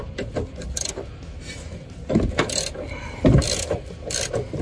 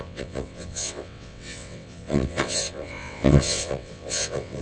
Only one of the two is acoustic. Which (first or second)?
first